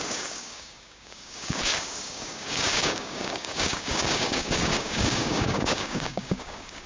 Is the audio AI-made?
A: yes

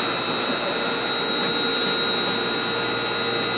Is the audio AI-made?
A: no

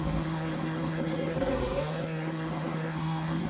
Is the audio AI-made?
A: yes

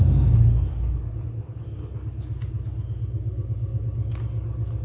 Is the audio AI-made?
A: no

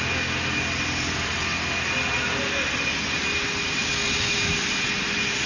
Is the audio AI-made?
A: no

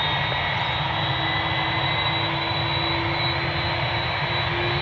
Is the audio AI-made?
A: no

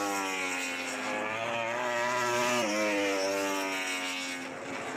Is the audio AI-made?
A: no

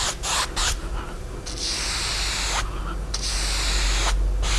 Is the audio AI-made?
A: no